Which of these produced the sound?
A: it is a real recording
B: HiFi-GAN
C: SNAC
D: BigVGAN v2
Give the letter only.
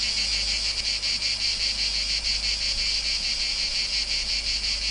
A